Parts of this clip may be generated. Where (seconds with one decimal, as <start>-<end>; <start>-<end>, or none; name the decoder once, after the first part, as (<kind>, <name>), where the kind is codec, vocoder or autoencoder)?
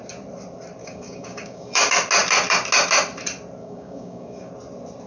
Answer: 0.8-1.8 (codec, DAC); 3.6-4.5